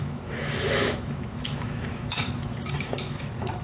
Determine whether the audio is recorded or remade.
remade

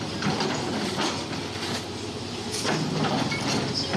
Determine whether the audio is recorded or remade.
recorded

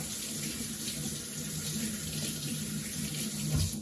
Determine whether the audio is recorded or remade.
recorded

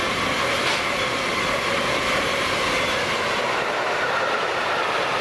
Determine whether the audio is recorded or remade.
recorded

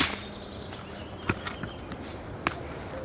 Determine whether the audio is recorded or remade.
recorded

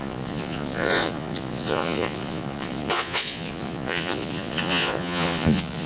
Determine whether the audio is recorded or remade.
remade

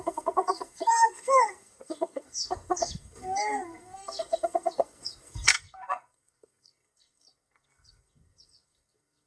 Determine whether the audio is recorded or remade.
remade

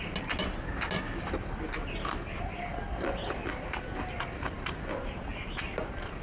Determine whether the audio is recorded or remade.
recorded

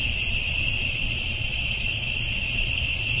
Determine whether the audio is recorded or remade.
recorded